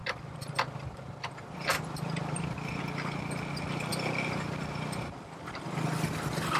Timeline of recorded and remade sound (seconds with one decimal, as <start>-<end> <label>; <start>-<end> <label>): 0.0-2.8 remade; 2.8-3.9 recorded; 3.9-5.3 remade; 5.3-6.6 recorded